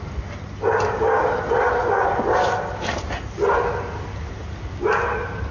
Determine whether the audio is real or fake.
real